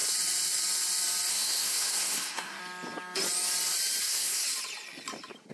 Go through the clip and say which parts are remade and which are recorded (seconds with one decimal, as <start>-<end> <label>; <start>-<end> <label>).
0.0-1.3 recorded; 1.3-2.6 remade; 2.6-4.0 recorded; 4.0-4.4 remade; 4.4-5.5 recorded